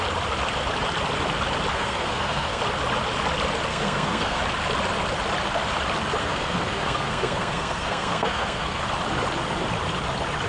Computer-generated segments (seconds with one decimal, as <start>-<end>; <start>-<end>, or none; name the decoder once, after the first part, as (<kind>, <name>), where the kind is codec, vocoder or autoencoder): 1.7-2.6 (codec, SNAC); 3.7-4.4; 6.2-8.8